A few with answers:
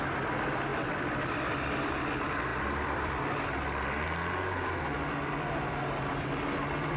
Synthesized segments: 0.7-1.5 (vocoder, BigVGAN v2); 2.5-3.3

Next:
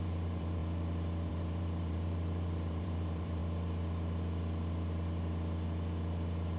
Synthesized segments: 0.0-0.6 (vocoder, BigVGAN v2); 1.3-3.4

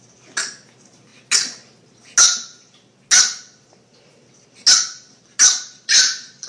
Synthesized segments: none

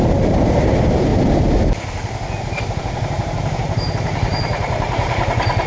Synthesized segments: 0.0-1.1 (vocoder, BigVGAN v2); 2.4-5.7

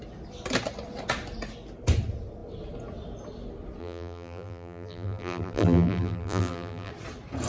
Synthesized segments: 3.8-6.9 (vocoder, BigVGAN v2)